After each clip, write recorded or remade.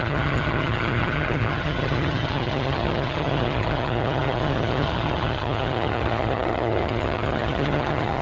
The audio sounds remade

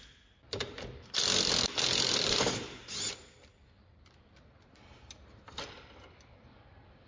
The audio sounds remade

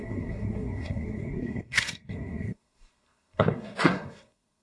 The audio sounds remade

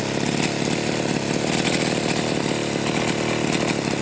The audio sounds recorded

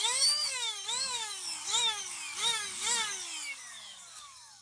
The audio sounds remade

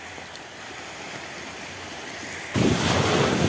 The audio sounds recorded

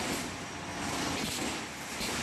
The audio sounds recorded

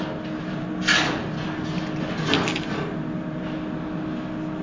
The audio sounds recorded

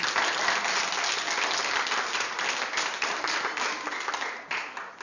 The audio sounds recorded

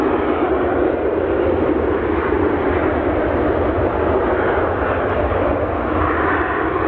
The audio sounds recorded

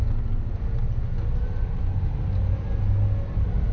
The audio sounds recorded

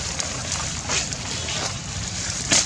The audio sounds recorded